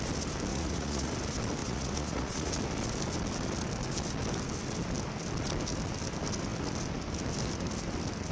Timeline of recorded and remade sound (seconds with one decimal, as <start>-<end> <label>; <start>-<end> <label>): 0.0-0.5 recorded; 0.5-1.1 remade; 1.1-1.6 recorded; 1.6-2.5 remade; 2.5-8.3 recorded